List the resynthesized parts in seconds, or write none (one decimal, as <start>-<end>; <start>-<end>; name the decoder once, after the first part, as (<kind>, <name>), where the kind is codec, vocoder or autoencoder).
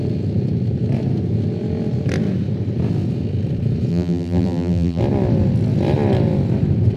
3.9-5.0 (vocoder, BigVGAN v2)